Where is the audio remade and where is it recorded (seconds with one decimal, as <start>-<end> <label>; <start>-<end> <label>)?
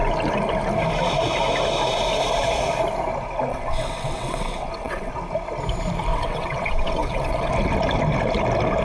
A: 0.0-3.5 recorded; 3.5-5.1 remade; 5.1-6.1 recorded; 6.1-7.5 remade; 7.5-8.8 recorded